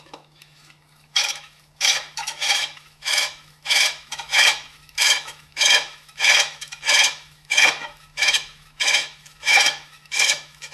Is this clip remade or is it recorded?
remade